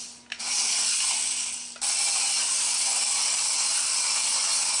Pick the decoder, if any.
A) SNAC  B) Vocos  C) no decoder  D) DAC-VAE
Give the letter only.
C